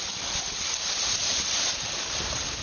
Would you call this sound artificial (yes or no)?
no